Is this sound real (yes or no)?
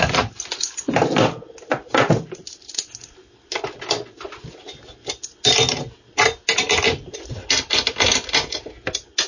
yes